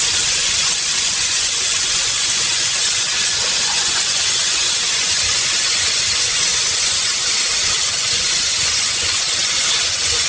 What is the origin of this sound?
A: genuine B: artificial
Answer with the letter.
B